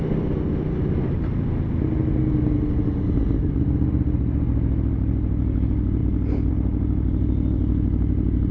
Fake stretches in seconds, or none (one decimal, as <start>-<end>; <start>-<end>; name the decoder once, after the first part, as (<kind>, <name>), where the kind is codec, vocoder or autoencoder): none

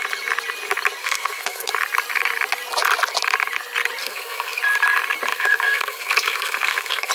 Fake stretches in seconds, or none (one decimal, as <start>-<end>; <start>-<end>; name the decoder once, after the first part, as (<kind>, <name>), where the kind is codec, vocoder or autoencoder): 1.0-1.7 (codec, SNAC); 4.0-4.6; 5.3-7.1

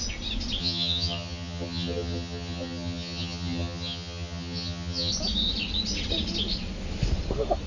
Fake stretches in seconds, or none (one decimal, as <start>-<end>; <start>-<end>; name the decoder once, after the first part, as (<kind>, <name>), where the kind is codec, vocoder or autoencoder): 0.6-5.1 (vocoder, HiFi-GAN)

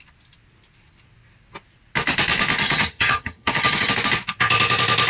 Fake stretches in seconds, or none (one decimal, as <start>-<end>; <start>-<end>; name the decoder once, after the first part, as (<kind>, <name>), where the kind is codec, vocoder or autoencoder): 2.6-3.9 (vocoder, HiFi-GAN)

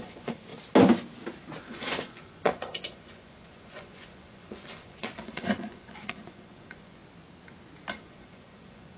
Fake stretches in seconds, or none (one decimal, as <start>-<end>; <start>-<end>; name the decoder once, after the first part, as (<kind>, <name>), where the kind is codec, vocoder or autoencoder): 0.0-0.5 (vocoder, Vocos); 1.6-7.0; 7.9-9.0

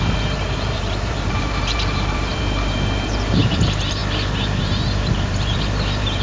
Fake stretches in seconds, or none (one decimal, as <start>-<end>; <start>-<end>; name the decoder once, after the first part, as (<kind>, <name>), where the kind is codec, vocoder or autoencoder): 0.0-4.0 (vocoder, BigVGAN v2); 4.6-6.2